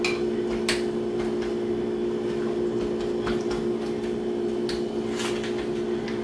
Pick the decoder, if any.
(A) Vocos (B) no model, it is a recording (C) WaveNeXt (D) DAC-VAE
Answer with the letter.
B